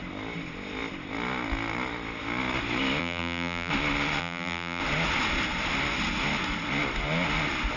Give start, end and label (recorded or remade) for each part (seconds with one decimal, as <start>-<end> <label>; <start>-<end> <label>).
0.0-3.0 recorded; 3.0-3.7 remade; 3.7-4.2 recorded; 4.2-4.8 remade; 4.8-7.8 recorded